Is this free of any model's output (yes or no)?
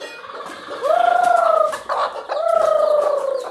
yes